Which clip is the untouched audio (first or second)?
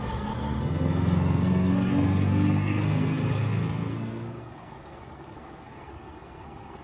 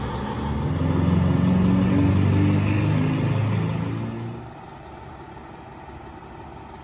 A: second